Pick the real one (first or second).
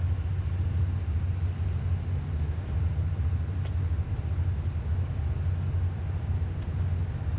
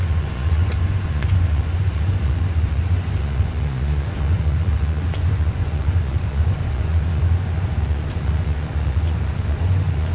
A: first